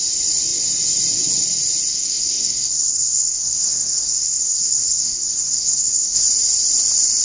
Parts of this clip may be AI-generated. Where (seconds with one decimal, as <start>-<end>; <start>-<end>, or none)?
1.9-6.2